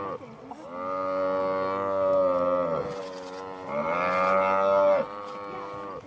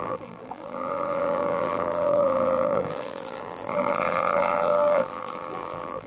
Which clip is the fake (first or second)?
second